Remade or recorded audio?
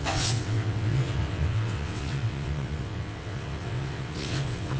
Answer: remade